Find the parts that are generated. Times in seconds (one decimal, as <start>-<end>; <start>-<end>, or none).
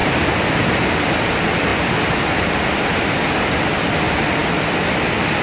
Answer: 0.0-1.0